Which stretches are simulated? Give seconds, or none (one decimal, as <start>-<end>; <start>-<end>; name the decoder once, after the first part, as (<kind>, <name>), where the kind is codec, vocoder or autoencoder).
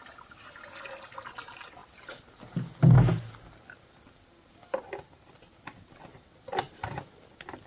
none